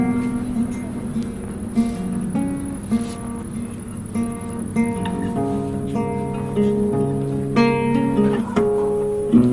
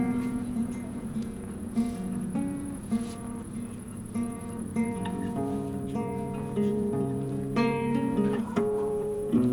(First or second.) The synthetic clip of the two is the second